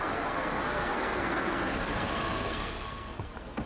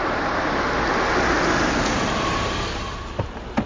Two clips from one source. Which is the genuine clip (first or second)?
second